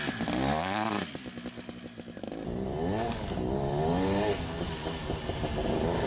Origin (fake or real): real